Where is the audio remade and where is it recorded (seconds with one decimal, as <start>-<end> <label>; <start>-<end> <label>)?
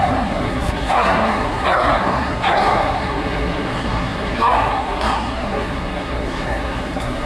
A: 0.0-7.3 remade